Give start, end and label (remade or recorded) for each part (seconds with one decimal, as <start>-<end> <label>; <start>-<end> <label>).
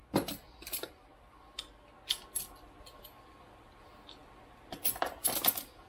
0.0-5.9 recorded